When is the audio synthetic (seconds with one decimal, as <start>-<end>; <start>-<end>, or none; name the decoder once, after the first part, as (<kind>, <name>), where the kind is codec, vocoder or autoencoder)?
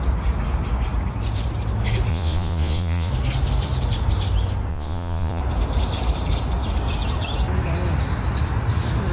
2.1-3.1 (vocoder, Vocos); 4.7-5.4